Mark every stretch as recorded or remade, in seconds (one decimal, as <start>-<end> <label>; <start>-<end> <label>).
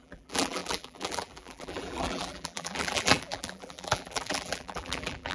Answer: 0.0-5.3 remade